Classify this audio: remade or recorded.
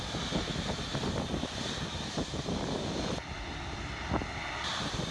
recorded